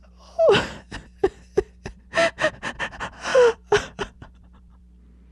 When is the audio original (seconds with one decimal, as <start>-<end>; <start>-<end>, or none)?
0.0-3.3; 4.8-5.3

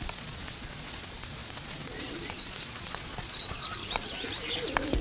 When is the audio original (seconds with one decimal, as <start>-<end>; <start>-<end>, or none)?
3.8-5.0